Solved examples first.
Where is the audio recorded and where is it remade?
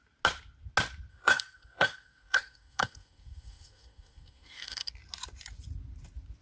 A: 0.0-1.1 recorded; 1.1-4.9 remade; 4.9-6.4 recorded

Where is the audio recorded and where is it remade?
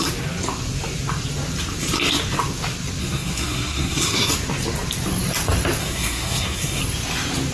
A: 0.0-3.0 recorded; 3.0-4.3 remade; 4.3-5.8 recorded; 5.8-6.8 remade; 6.8-7.5 recorded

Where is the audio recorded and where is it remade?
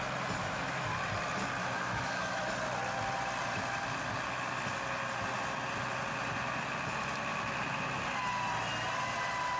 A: 0.0-0.4 recorded; 0.4-0.9 remade; 0.9-1.6 recorded; 1.6-2.5 remade; 2.5-9.6 recorded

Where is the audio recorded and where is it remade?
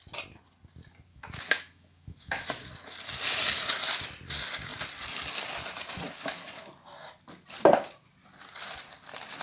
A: 0.0-1.1 recorded; 1.1-2.7 remade; 2.7-9.4 recorded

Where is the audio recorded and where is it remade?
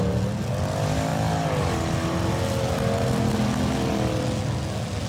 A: 0.0-5.1 recorded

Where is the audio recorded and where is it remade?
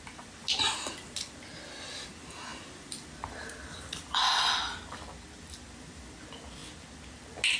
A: 0.0-7.6 recorded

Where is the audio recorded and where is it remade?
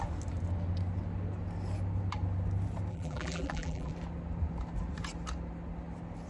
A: 0.0-2.9 recorded; 2.9-3.9 remade; 3.9-6.3 recorded